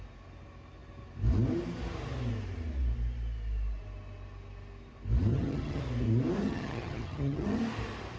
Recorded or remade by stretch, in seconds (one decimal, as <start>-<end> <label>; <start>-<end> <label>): 0.0-5.3 recorded; 5.3-5.8 remade; 5.8-6.4 recorded; 6.4-7.6 remade; 7.6-8.2 recorded